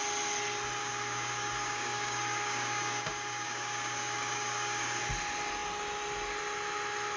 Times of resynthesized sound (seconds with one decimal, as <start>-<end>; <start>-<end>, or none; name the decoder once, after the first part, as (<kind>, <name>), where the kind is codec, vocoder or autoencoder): 0.8-5.0 (codec, DAC)